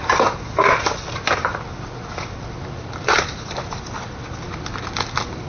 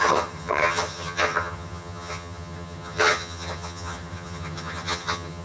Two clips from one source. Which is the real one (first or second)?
first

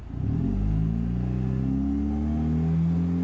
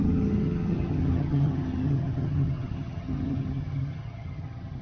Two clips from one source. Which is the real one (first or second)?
first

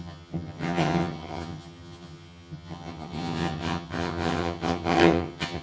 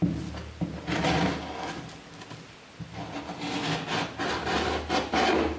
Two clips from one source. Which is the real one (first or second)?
second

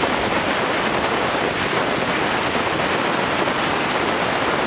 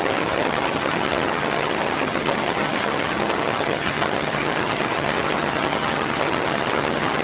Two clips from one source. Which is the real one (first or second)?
first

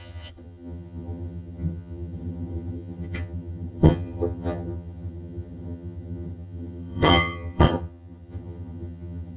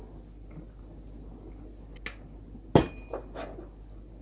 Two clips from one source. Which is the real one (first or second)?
second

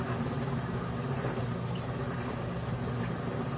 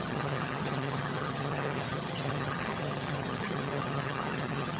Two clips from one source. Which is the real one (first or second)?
first